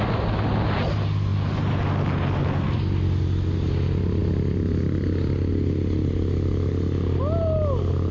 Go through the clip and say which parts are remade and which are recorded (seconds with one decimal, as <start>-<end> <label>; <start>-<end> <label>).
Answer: 0.0-8.1 recorded